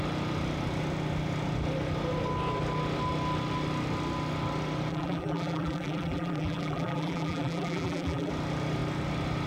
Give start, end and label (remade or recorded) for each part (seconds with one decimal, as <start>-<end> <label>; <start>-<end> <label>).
0.0-4.9 recorded; 4.9-8.3 remade; 8.3-9.5 recorded